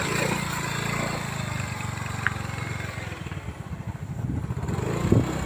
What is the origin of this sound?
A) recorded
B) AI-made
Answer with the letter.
A